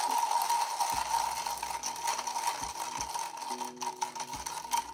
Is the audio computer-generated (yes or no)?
no